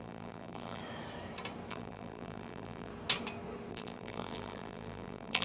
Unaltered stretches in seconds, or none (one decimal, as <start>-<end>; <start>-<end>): 0.8-1.7; 2.9-3.7